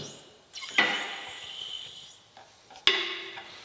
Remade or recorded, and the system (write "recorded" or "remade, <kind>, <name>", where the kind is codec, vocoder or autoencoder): recorded